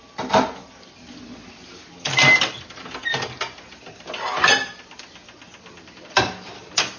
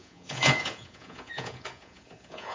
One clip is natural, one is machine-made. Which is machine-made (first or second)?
second